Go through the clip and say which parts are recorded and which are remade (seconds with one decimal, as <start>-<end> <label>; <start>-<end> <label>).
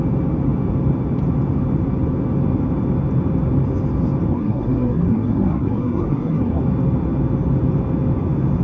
0.0-4.3 recorded; 4.3-6.6 remade; 6.6-8.6 recorded